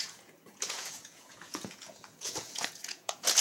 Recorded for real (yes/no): no